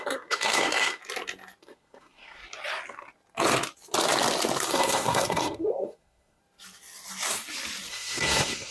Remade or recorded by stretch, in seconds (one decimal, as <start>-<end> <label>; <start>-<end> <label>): 0.0-1.0 remade; 1.0-1.6 recorded; 1.6-2.4 remade; 2.4-4.7 recorded; 4.7-6.4 remade; 6.4-7.9 recorded; 7.9-8.7 remade